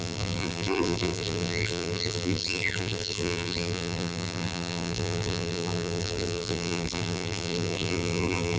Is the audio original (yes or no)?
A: no